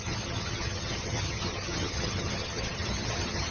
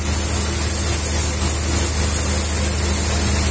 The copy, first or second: first